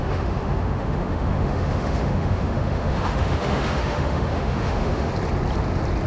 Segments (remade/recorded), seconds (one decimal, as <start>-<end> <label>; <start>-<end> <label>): 0.0-5.1 remade; 5.1-6.1 recorded